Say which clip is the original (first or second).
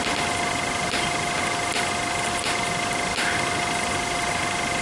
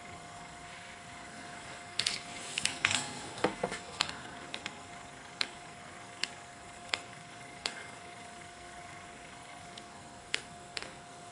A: first